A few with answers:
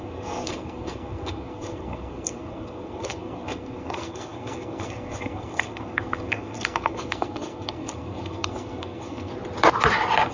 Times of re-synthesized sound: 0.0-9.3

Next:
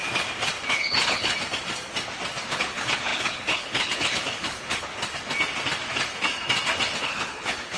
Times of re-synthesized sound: 0.7-1.3; 2.5-4.9; 7.0-7.8